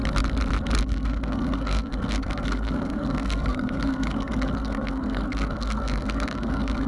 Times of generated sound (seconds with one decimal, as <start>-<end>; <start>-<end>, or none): 0.8-6.9